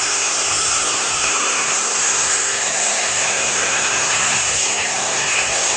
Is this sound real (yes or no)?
no